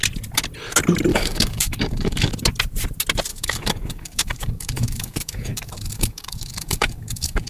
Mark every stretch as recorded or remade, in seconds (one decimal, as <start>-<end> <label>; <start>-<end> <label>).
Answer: 0.0-1.1 recorded; 1.1-2.3 remade; 2.3-3.3 recorded; 3.3-7.5 remade